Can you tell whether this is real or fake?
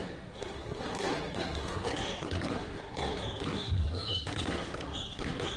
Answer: fake